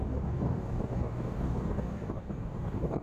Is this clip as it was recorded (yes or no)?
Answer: no